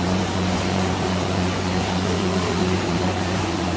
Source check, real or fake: fake